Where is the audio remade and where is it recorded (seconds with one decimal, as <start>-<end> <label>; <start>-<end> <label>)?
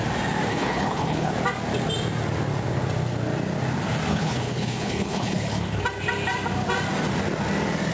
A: 0.0-0.5 recorded; 0.5-1.3 remade; 1.3-4.1 recorded; 4.1-5.8 remade; 5.8-7.9 recorded